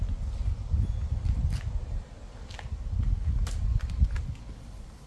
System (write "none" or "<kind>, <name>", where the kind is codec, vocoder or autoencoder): none